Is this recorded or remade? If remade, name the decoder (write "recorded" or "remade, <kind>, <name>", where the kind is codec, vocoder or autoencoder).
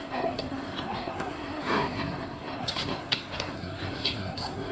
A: remade, codec, SNAC